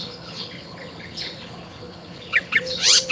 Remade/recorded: remade